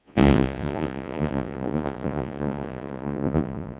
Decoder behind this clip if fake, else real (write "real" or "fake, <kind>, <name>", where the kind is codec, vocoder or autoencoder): fake, vocoder, Vocos